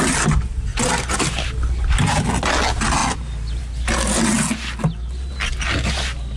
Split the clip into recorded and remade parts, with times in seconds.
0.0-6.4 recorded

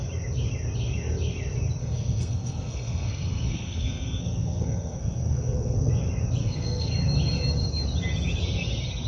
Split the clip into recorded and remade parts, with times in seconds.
0.0-1.8 recorded; 1.8-5.9 remade; 5.9-6.4 recorded; 6.4-6.9 remade; 6.9-9.1 recorded

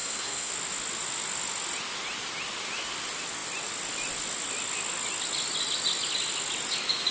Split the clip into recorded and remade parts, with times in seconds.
0.0-0.5 remade; 0.5-7.1 recorded

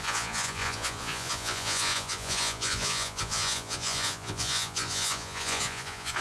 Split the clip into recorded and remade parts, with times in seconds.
0.0-6.2 remade

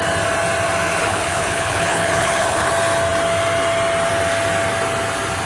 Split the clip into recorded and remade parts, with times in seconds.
0.0-1.0 recorded; 1.0-2.7 remade; 2.7-5.5 recorded